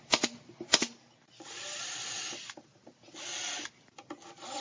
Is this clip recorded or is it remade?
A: recorded